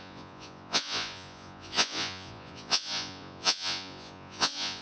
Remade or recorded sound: remade